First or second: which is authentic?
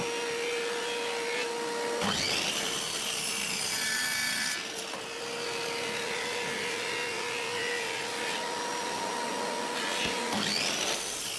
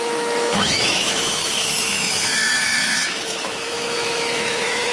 first